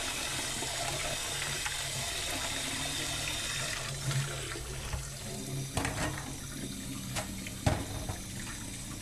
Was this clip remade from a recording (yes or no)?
no